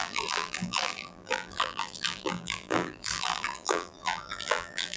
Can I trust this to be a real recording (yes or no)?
no